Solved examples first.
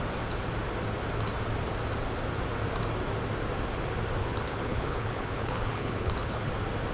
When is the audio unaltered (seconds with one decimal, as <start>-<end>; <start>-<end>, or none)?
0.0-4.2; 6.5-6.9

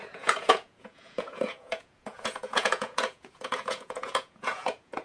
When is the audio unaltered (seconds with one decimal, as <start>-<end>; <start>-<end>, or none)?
none

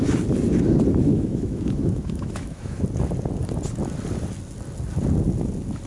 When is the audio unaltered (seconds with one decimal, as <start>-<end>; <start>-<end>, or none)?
0.0-1.1; 2.8-5.9

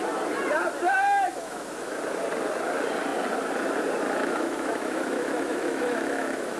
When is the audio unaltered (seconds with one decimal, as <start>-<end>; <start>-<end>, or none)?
0.0-1.4; 2.0-4.2